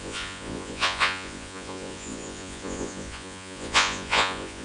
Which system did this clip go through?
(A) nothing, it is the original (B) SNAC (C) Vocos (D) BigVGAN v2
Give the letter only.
C